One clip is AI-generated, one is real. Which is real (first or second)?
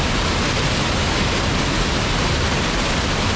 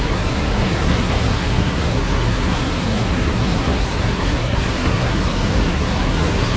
first